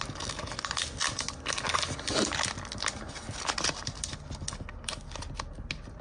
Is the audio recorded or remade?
recorded